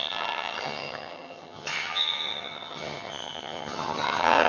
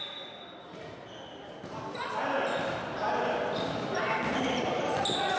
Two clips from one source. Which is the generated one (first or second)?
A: first